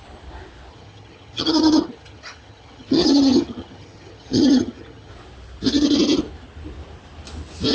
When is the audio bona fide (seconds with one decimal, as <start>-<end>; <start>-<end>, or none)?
0.0-0.7; 5.1-7.7